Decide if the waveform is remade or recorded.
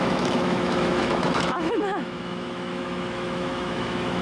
remade